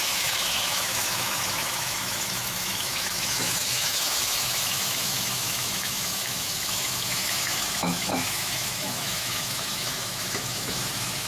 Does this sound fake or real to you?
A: fake